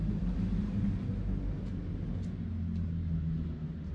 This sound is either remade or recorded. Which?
recorded